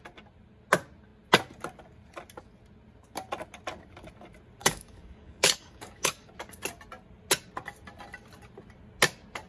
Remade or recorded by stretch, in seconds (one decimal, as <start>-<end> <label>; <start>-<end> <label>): 0.0-4.6 recorded; 4.6-6.3 remade; 6.3-9.5 recorded